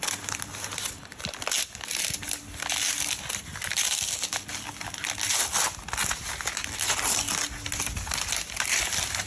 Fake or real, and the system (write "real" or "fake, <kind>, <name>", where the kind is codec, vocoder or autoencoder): real